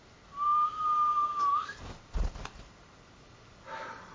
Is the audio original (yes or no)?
yes